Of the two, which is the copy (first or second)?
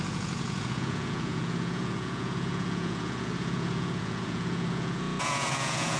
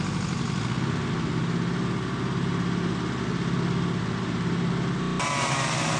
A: first